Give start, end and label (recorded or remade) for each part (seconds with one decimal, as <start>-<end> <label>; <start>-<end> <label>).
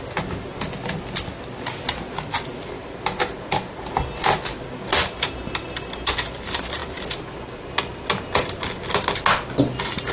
0.0-10.1 recorded